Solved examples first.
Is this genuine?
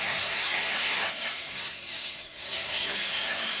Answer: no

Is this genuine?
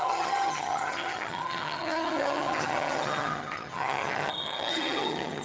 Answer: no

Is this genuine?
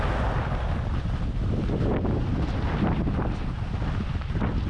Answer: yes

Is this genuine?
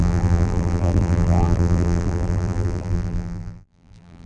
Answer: no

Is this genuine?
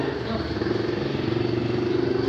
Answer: yes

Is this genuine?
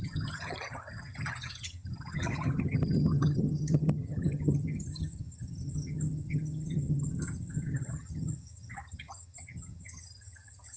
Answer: no